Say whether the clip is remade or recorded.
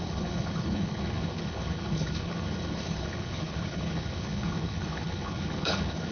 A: remade